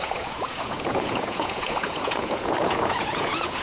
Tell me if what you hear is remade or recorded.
remade